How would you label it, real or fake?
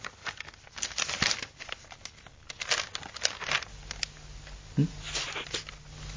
real